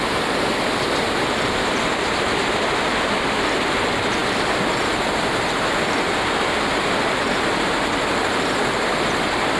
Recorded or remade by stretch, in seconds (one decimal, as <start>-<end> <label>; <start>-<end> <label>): 0.0-9.6 remade